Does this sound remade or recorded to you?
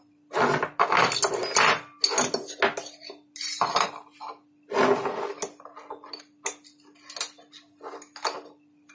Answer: recorded